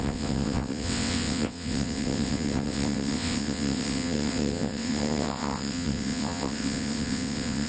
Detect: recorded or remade remade